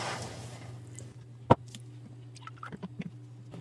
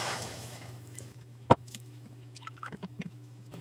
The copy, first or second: second